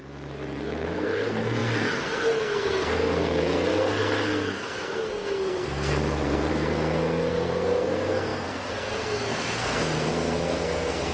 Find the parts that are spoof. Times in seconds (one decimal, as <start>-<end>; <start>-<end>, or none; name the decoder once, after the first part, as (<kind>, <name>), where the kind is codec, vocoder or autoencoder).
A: 0.0-11.1 (codec, SNAC)